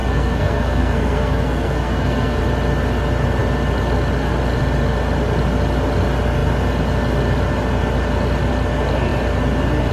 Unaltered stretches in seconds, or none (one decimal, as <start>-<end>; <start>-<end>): 2.4-9.9